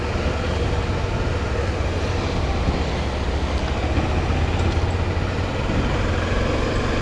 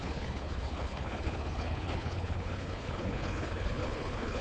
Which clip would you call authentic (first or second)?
first